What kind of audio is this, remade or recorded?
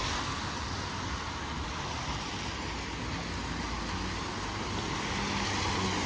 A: recorded